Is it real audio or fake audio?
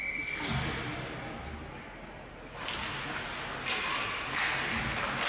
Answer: real